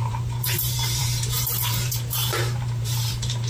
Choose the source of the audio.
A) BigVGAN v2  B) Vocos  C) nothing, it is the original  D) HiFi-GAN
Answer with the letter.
A